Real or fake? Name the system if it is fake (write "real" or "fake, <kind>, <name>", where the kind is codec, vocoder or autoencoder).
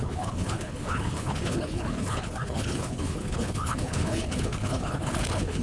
fake, codec, HILCodec